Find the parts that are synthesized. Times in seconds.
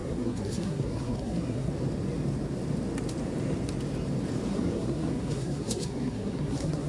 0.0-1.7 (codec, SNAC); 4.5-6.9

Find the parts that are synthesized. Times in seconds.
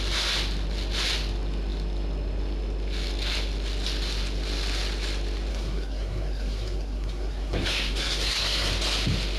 5.5-8.7 (codec, SNAC)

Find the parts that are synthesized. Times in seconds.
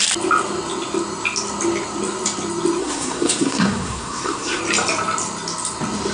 2.8-4.6 (codec, SNAC)